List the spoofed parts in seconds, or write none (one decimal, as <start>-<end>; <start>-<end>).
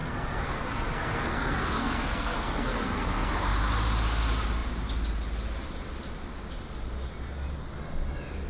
0.0-3.3